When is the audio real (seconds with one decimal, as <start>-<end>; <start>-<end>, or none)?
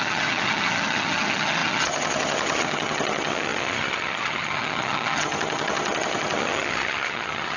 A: none